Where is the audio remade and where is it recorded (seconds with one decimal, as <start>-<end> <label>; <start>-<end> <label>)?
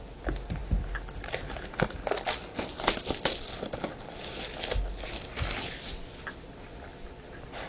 0.0-7.7 recorded